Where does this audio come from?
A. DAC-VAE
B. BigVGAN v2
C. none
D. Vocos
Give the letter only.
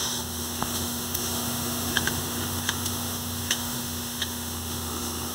A